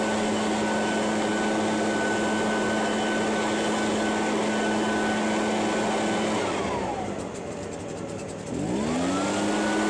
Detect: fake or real real